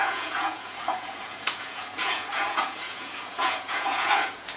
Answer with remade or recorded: remade